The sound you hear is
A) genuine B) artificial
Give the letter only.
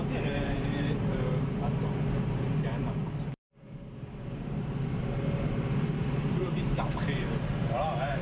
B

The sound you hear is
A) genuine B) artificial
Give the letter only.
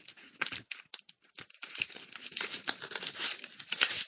A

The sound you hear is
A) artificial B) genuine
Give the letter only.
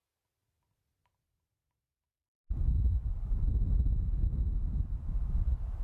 B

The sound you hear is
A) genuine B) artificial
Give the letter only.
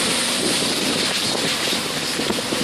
A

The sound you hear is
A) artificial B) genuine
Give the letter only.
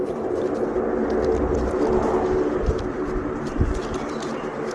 B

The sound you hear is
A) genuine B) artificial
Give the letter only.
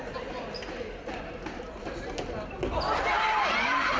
A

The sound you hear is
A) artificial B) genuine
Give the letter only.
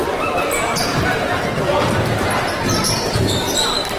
A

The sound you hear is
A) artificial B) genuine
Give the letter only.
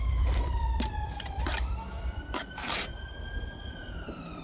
A